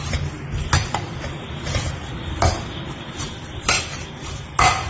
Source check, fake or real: real